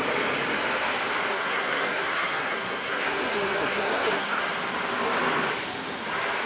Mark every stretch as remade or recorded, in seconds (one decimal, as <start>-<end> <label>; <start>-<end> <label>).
0.0-1.3 recorded; 1.3-4.4 remade; 4.4-6.5 recorded